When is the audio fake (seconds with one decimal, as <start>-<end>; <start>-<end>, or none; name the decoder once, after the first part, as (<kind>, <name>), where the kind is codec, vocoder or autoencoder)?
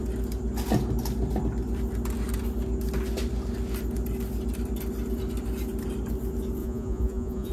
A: 6.6-7.5 (vocoder, Vocos)